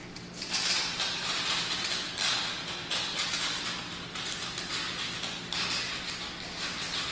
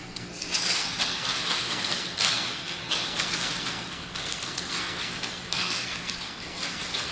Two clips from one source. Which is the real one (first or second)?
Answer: first